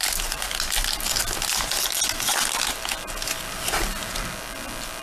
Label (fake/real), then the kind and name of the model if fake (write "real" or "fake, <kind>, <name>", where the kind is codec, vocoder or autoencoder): real